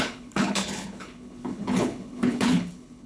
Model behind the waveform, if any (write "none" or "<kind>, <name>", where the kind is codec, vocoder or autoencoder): codec, HILCodec